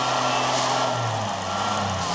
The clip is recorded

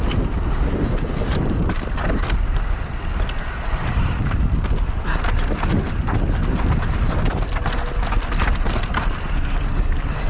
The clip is recorded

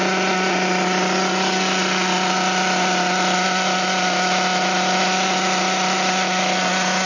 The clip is recorded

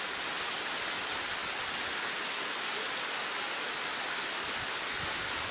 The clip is recorded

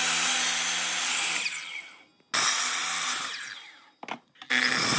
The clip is recorded